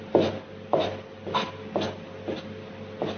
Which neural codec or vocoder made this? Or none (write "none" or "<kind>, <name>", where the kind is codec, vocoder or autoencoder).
none